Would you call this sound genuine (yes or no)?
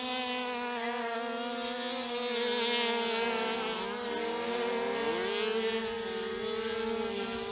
yes